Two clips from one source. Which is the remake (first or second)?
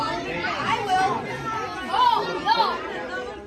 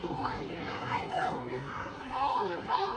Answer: second